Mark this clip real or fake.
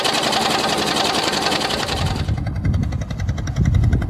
real